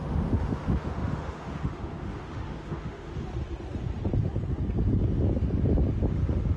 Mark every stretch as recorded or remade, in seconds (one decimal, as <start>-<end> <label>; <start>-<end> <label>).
0.0-3.1 remade; 3.1-6.1 recorded; 6.1-6.6 remade